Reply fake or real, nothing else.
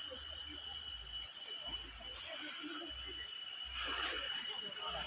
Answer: real